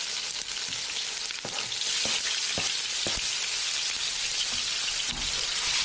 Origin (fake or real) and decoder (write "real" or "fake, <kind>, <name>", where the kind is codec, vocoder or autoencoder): real